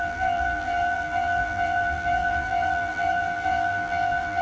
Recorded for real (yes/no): no